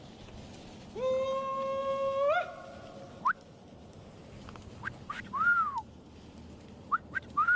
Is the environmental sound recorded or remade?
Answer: recorded